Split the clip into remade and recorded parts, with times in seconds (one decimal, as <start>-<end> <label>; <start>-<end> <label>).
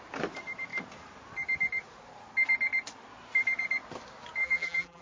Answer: 0.0-4.4 recorded; 4.4-5.0 remade